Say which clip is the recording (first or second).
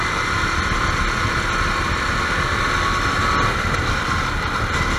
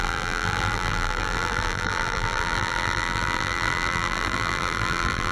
first